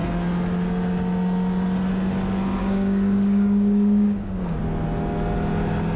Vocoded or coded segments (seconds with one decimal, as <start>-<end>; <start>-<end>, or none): 2.6-4.6